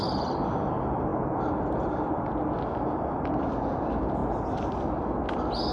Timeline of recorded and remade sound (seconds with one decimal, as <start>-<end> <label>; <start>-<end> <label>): 0.0-5.7 recorded